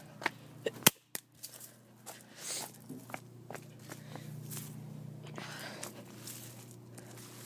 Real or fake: real